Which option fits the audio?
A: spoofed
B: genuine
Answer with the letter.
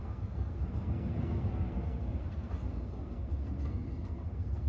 A